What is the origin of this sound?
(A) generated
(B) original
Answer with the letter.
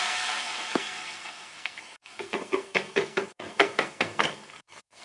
A